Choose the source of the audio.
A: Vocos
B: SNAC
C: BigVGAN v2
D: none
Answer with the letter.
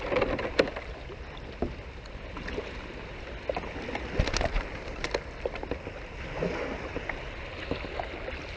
D